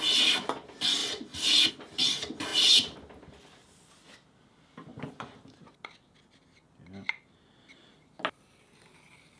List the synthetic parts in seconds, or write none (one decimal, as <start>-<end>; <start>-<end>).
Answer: 1.0-1.7; 4.9-5.6